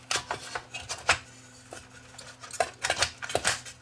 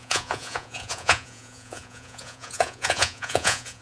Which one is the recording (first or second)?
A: first